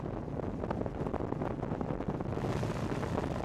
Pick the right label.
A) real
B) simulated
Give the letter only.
A